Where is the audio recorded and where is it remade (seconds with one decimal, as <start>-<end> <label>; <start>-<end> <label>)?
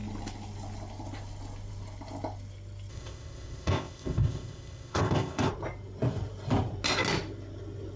0.0-2.9 recorded; 2.9-5.5 remade; 5.5-8.0 recorded